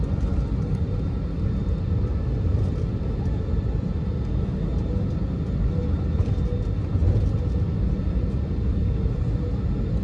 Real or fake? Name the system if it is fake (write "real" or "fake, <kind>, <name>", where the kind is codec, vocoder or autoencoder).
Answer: real